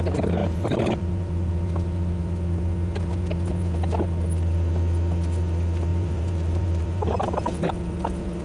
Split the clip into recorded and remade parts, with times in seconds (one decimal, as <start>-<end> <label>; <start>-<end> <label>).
0.0-0.4 recorded; 0.4-1.5 remade; 1.5-5.9 recorded; 5.9-7.6 remade; 7.6-8.4 recorded